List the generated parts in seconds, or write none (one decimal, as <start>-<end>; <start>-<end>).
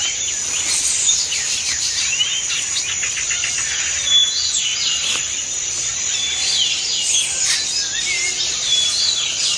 none